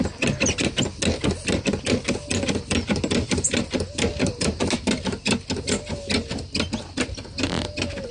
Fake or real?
real